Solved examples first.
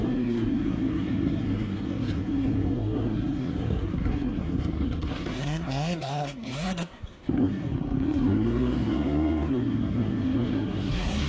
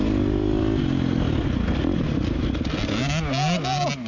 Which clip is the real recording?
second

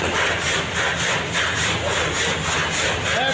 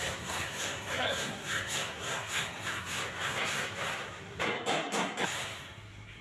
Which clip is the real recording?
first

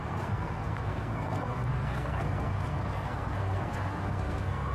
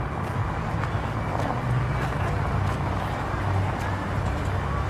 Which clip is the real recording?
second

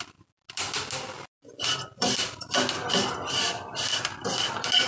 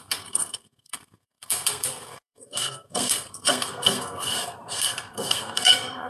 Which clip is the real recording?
first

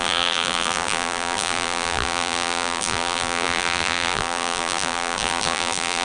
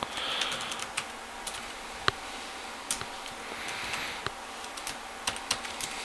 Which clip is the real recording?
second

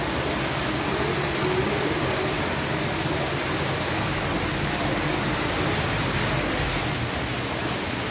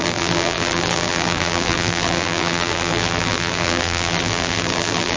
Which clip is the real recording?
first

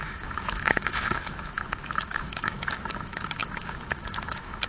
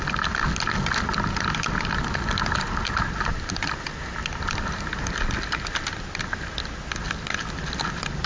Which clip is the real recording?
second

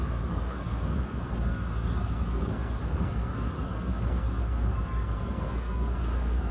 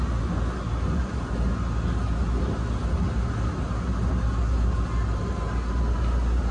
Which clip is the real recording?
second